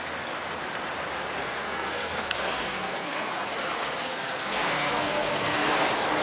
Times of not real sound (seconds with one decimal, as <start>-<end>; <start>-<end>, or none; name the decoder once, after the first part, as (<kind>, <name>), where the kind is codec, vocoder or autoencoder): 1.4-3.5 (codec, SNAC); 4.0-5.7